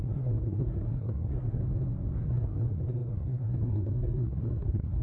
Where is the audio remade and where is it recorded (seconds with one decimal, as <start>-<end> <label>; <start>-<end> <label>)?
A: 0.0-1.6 remade; 1.6-2.2 recorded; 2.2-5.0 remade